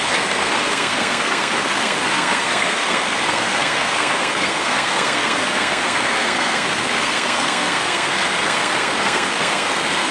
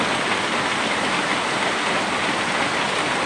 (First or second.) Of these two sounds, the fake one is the first